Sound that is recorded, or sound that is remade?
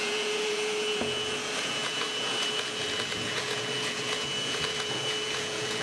remade